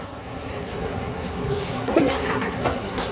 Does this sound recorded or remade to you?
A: remade